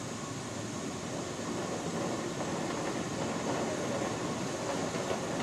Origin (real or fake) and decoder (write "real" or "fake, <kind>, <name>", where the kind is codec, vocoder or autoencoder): real